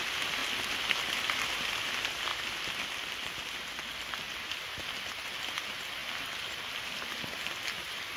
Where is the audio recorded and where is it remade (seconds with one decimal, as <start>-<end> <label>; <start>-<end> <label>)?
0.0-8.2 recorded